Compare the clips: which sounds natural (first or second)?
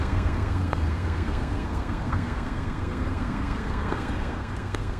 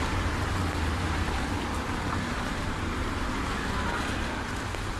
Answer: second